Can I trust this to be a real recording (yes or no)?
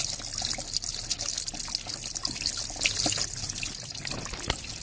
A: yes